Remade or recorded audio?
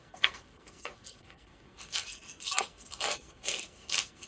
remade